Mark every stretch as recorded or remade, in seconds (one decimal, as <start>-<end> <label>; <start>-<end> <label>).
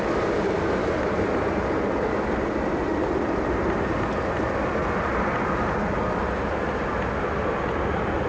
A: 0.0-8.3 recorded